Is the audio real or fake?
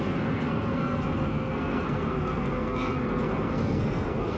fake